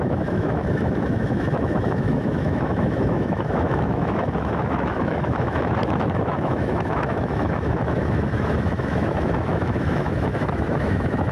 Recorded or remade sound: remade